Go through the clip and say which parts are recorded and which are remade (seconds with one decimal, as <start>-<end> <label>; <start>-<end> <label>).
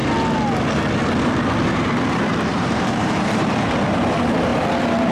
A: 0.0-2.5 recorded; 2.5-3.8 remade; 3.8-5.1 recorded